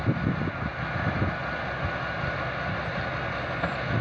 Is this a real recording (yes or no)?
yes